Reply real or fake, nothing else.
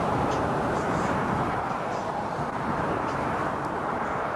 fake